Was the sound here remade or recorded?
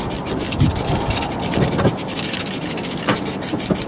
recorded